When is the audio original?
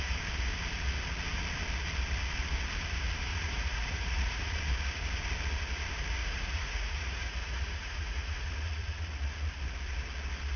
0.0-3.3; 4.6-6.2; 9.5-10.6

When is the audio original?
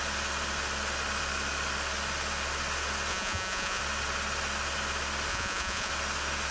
0.0-3.1; 3.8-5.3; 5.9-6.5